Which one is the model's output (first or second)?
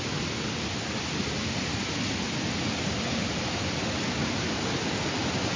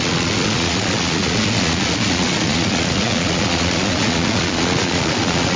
second